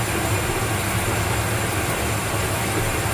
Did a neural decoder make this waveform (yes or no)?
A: no